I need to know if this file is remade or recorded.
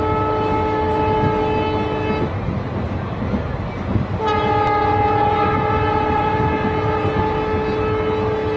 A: recorded